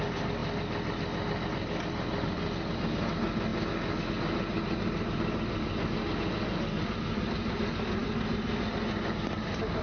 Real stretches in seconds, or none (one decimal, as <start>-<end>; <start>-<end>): 0.0-9.8